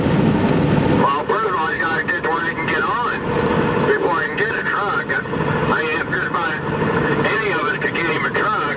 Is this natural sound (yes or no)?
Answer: yes